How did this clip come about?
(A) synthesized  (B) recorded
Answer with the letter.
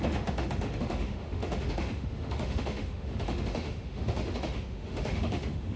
A